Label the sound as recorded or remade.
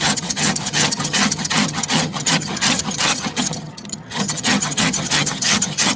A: remade